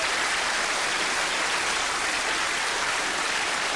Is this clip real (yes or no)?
no